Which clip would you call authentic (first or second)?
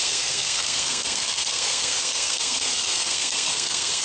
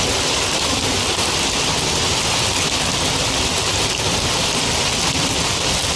second